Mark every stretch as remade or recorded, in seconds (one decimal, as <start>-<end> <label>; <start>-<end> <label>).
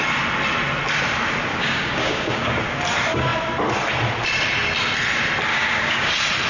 0.0-1.5 recorded; 1.5-2.6 remade; 2.6-5.5 recorded; 5.5-6.1 remade; 6.1-6.5 recorded